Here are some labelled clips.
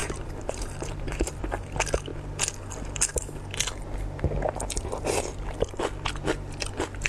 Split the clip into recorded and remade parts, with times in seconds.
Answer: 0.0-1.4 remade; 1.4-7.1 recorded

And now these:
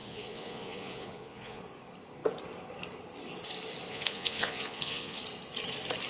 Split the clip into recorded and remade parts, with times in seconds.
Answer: 0.0-1.6 remade; 1.6-3.9 recorded; 3.9-5.2 remade; 5.2-6.1 recorded

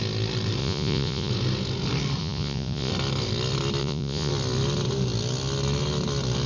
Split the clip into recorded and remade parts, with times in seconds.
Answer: 0.0-0.6 recorded; 0.6-1.3 remade; 1.3-2.2 recorded; 2.2-2.9 remade; 2.9-3.8 recorded; 3.8-4.3 remade; 4.3-6.5 recorded

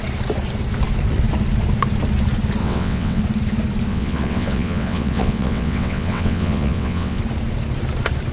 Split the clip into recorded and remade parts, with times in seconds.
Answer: 0.0-2.6 recorded; 2.6-3.2 remade; 3.2-3.9 recorded; 3.9-7.2 remade; 7.2-8.3 recorded

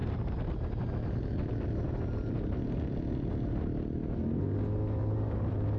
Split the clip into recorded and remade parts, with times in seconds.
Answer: 0.0-5.8 recorded

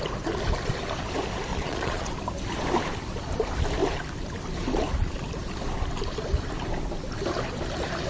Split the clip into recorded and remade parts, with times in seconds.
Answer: 0.0-1.5 recorded; 1.5-2.1 remade; 2.1-8.1 recorded